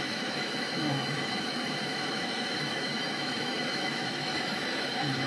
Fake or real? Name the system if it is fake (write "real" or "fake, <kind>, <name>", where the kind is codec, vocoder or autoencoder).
fake, autoencoder, DAC-VAE